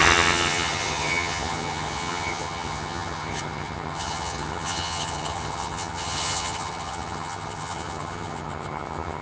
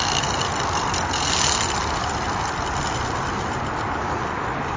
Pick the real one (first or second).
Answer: second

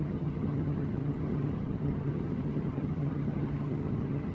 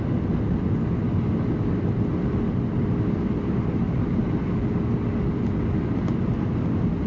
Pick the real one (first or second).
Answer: second